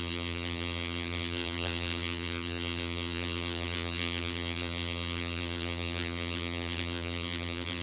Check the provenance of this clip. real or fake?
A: fake